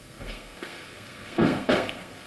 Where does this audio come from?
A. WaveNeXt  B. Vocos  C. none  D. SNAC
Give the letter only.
D